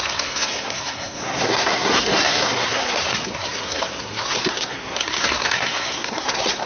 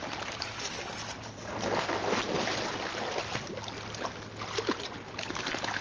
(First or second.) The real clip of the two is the second